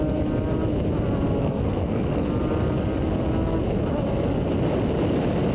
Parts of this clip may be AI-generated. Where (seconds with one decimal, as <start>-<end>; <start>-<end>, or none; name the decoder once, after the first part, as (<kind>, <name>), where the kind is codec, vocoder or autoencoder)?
1.4-2.3 (codec, SNAC)